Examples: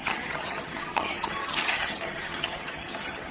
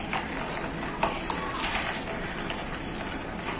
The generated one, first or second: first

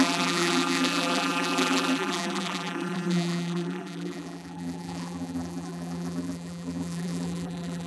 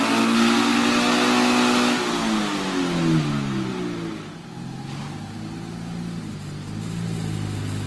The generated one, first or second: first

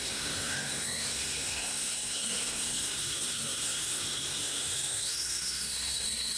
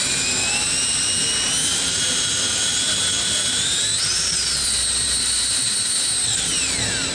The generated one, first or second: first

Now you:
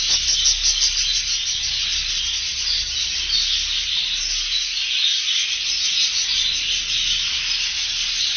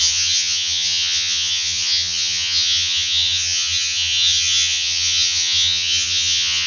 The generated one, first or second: second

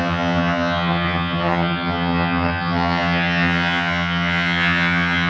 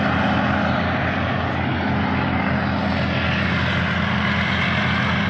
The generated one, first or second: first